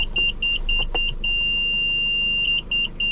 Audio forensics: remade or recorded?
recorded